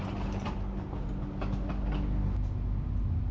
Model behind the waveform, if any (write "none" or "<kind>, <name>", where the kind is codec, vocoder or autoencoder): none